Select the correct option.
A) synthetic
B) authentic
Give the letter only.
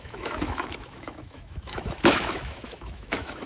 A